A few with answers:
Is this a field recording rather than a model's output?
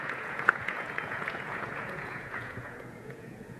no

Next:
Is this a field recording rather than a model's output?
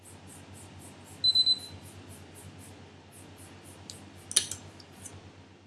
yes